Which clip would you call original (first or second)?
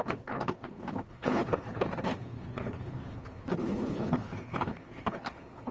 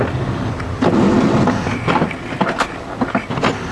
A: second